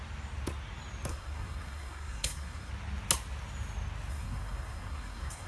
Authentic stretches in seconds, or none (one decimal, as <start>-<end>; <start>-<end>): 0.0-1.1; 2.7-4.1